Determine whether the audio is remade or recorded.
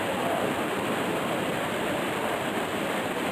remade